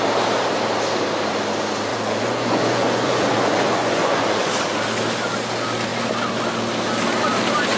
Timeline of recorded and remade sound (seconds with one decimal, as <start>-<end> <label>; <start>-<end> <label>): 0.0-1.9 recorded; 1.9-4.5 remade; 4.5-7.8 recorded